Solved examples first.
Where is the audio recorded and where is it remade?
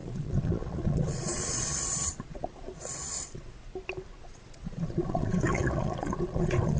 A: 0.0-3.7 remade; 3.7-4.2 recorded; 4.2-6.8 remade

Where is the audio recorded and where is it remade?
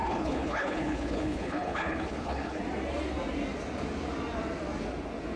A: 0.0-2.6 remade; 2.6-5.4 recorded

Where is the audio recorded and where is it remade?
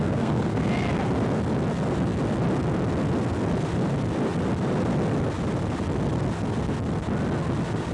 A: 0.0-0.7 remade; 0.7-7.9 recorded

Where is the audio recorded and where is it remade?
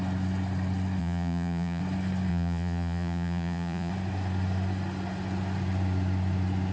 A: 0.0-1.0 recorded; 1.0-1.8 remade; 1.8-2.3 recorded; 2.3-3.9 remade; 3.9-6.7 recorded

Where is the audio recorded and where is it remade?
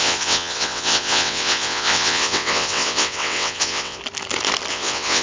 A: 0.0-4.0 remade; 4.0-4.7 recorded; 4.7-5.2 remade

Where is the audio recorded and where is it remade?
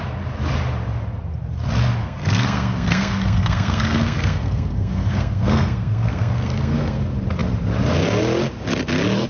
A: 0.0-2.0 recorded; 2.0-7.0 remade; 7.0-9.3 recorded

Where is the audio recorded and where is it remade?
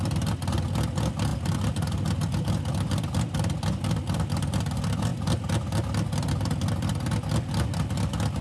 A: 0.0-8.4 recorded